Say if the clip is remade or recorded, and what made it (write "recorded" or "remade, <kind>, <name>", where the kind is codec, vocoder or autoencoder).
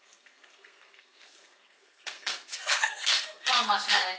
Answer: remade, codec, SNAC